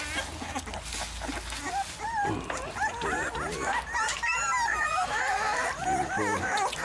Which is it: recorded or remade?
recorded